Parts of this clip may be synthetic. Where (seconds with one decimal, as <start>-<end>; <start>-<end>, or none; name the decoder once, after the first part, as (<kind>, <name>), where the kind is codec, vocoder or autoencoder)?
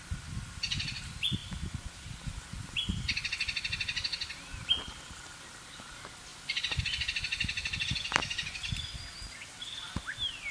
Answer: 6.3-6.8 (vocoder, BigVGAN v2)